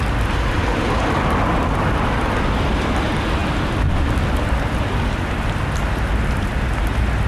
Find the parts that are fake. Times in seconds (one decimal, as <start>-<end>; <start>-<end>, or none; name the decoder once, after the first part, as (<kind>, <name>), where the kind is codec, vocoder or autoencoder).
none